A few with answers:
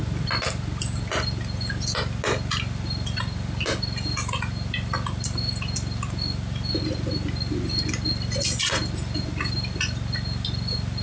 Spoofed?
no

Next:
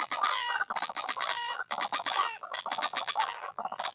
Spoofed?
yes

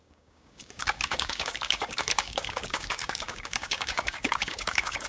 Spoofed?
yes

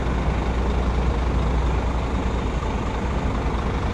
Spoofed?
no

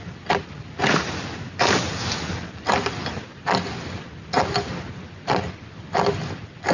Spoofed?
no